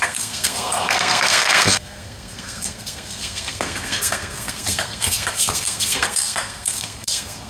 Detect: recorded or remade remade